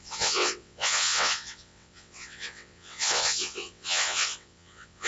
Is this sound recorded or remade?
remade